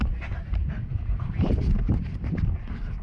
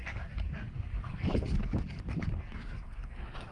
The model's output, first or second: second